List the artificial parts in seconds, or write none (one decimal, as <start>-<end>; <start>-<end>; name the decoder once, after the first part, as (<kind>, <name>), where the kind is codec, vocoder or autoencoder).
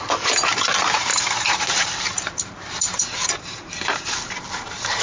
1.1-4.1 (vocoder, BigVGAN v2)